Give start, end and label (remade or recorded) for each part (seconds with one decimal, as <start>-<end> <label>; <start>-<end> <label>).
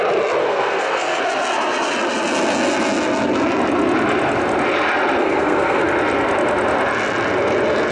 0.0-0.4 recorded; 0.4-1.2 remade; 1.2-5.2 recorded; 5.2-5.8 remade; 5.8-7.9 recorded